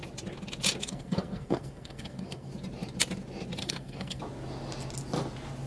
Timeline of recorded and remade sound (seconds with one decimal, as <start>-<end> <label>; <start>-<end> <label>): 0.0-0.8 recorded; 0.8-2.5 remade; 2.5-3.6 recorded; 3.6-4.2 remade; 4.2-5.7 recorded